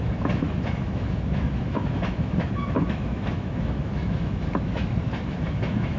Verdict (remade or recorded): remade